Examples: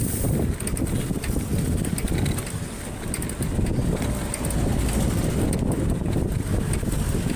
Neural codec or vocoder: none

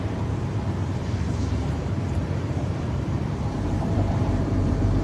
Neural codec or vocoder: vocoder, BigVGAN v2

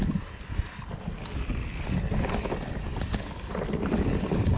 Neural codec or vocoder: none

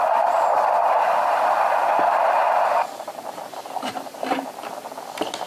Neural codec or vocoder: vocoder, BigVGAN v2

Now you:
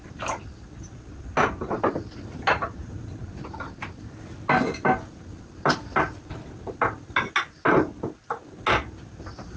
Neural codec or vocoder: none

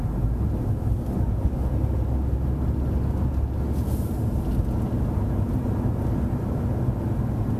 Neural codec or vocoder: none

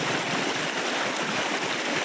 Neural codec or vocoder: none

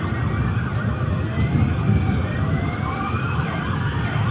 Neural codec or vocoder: vocoder, BigVGAN v2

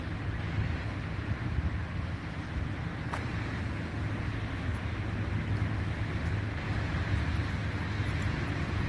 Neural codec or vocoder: none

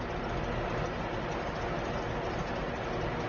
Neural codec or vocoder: none